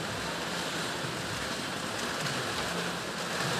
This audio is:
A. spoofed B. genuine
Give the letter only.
B